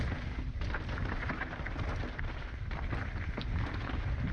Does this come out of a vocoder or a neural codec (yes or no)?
no